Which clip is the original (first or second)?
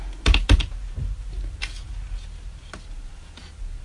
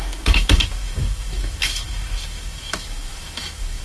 first